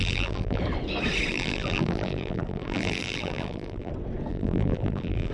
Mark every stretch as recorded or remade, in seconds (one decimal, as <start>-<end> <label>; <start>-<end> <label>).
0.0-0.6 remade; 0.6-1.3 recorded; 1.3-3.9 remade; 3.9-4.3 recorded; 4.3-5.3 remade